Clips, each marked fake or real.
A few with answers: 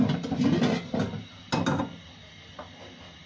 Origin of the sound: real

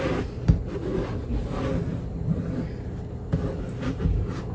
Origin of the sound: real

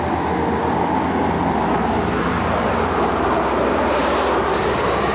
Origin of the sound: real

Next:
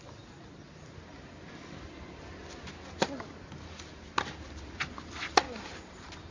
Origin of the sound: real